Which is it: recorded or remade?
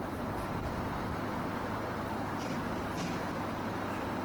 remade